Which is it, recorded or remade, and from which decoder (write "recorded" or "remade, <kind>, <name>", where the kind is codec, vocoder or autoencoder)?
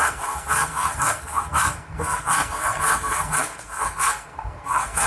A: remade, codec, SNAC